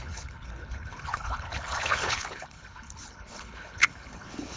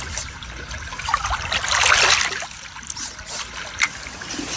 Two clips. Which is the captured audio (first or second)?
second